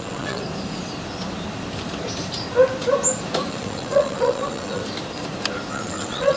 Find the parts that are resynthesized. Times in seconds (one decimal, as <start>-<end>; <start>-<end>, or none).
0.0-0.4; 3.5-4.8; 5.7-6.4